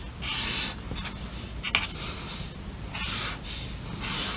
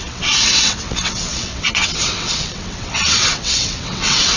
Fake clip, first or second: second